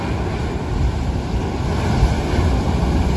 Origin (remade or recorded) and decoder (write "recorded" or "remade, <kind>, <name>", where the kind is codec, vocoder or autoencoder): recorded